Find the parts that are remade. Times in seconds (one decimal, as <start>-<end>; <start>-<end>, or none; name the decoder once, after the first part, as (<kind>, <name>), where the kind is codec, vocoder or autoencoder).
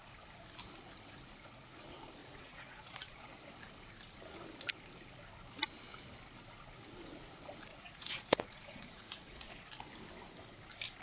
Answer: 2.2-3.2 (vocoder, Vocos); 7.7-9.5